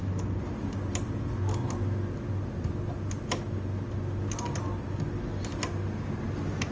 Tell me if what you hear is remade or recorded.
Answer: recorded